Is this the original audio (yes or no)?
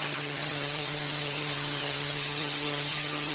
no